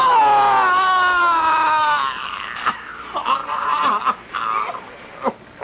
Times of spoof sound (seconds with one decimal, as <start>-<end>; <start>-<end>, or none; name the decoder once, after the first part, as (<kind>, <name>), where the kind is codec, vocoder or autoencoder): 3.4-4.0 (vocoder, Vocos)